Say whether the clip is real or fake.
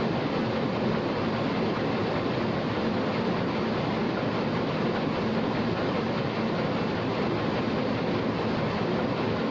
real